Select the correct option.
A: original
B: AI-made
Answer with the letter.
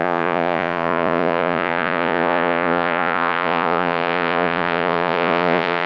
B